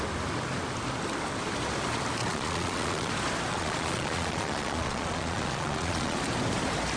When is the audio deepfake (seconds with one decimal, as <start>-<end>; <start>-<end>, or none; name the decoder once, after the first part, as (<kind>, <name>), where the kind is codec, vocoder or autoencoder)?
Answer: 2.2-3.1 (vocoder, Vocos); 3.5-6.2